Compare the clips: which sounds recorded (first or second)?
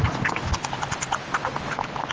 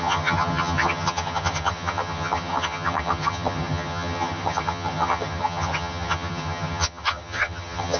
first